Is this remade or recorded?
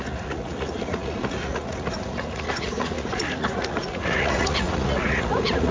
remade